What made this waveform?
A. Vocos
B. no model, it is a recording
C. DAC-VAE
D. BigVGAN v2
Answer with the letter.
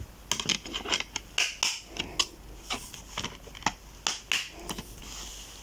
B